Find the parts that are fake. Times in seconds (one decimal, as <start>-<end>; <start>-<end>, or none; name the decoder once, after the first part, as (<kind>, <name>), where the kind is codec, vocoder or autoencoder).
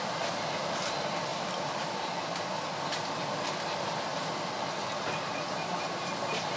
1.3-2.8 (vocoder, BigVGAN v2); 4.1-4.9